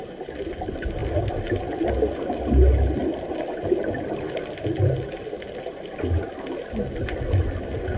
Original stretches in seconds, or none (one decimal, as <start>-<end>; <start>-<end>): 0.0-8.0

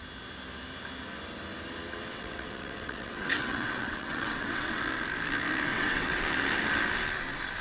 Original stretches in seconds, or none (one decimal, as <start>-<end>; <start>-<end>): 0.0-2.1; 4.8-5.7; 6.2-7.6

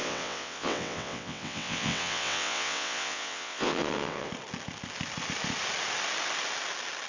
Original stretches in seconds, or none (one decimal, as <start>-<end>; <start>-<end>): 4.3-7.1

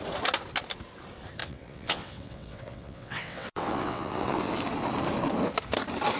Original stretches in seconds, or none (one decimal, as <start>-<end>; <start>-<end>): 0.0-1.4; 4.5-6.2

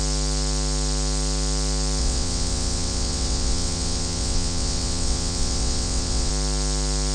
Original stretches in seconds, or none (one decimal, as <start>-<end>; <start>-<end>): 0.0-2.0; 6.3-7.1